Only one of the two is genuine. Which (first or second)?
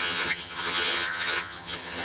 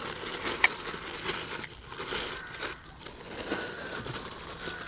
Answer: second